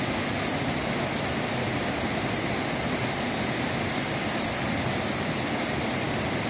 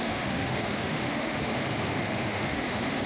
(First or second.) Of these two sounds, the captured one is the first